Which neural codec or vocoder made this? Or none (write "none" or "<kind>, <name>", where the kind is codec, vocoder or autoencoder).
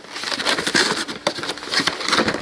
none